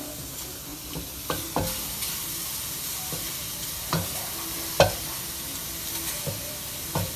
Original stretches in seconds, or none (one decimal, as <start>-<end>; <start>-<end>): 0.0-7.2